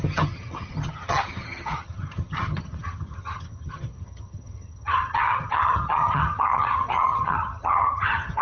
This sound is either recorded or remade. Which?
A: remade